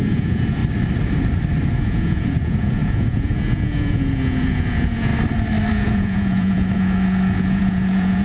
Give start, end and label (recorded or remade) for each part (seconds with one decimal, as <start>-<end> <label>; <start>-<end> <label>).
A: 0.0-0.6 remade; 0.6-1.7 recorded; 1.7-5.1 remade; 5.1-5.7 recorded; 5.7-8.2 remade